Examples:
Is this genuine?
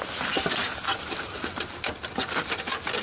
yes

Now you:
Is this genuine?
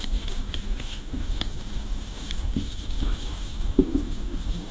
no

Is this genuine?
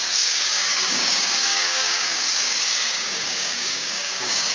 no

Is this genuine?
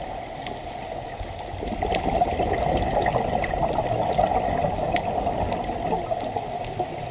yes